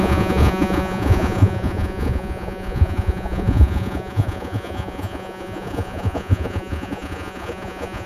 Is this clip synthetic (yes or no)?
yes